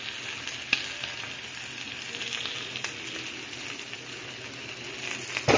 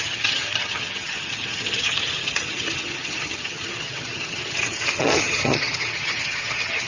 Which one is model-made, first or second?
second